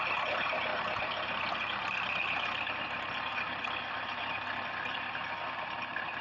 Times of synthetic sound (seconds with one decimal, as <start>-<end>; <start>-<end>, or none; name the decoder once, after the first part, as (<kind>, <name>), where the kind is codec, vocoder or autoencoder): 0.0-0.7 (vocoder, BigVGAN v2); 1.5-6.2